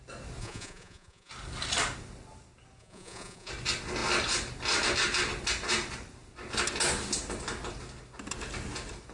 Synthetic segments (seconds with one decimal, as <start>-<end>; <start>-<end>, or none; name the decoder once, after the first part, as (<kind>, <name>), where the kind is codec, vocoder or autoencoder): 0.4-1.3 (vocoder, Vocos); 2.8-3.5